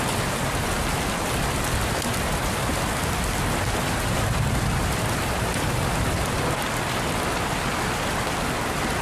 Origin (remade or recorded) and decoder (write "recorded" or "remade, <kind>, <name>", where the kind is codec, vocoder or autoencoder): recorded